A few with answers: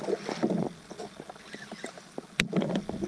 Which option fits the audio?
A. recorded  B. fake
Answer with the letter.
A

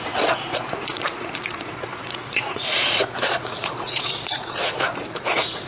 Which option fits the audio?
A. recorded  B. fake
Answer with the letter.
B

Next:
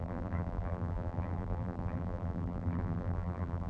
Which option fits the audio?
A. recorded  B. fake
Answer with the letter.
B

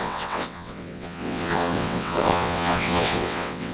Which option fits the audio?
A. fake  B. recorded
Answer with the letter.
A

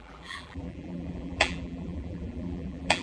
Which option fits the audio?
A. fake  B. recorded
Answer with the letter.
A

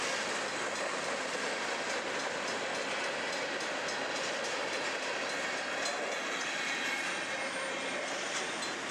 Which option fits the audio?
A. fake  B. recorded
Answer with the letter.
B